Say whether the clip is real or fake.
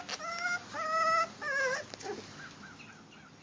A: real